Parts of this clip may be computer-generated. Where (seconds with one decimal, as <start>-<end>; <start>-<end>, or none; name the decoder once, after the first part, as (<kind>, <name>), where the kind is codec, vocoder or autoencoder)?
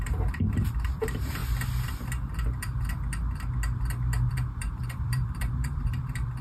0.0-1.4 (vocoder, BigVGAN v2); 4.3-6.4